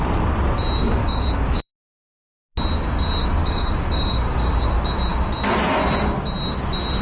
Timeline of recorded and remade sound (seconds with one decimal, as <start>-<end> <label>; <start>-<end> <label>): 0.0-1.0 recorded; 1.0-1.7 remade; 1.7-3.2 recorded; 3.2-4.5 remade; 4.5-7.0 recorded

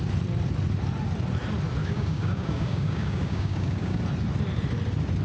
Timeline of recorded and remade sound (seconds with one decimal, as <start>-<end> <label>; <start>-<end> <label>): 0.0-1.8 recorded; 1.8-4.0 remade; 4.0-5.2 recorded

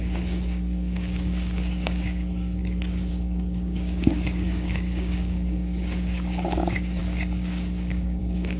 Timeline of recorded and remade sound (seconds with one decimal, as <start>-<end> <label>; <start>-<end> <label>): 0.0-2.6 remade; 2.6-3.1 recorded; 3.1-8.6 remade

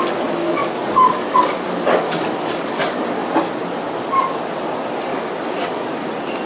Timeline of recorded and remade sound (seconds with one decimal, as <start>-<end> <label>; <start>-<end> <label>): 0.0-0.4 recorded; 0.4-2.8 remade; 2.8-5.1 recorded; 5.1-5.8 remade; 5.8-6.5 recorded